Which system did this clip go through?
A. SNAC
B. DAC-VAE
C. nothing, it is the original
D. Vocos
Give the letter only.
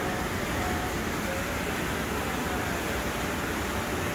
C